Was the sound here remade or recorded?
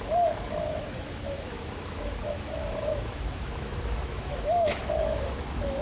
remade